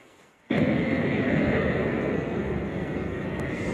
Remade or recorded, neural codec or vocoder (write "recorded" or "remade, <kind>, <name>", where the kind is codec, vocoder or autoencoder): remade, codec, SNAC